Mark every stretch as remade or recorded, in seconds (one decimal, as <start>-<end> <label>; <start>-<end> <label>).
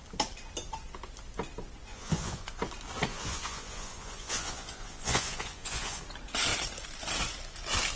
0.0-1.9 recorded; 1.9-2.6 remade; 2.6-3.1 recorded; 3.1-6.0 remade; 6.0-8.0 recorded